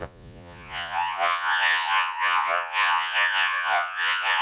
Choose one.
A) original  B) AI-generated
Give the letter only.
B